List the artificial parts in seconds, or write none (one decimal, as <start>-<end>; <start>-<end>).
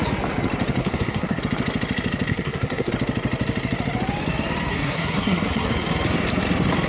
0.8-1.4; 2.3-2.9; 4.7-5.7